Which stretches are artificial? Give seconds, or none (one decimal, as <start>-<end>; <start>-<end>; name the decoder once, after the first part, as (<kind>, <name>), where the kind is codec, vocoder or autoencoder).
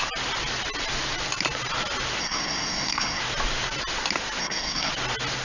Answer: 2.2-3.2 (codec, SNAC); 4.4-4.9